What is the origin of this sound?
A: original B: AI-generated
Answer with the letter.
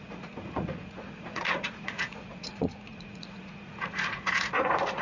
B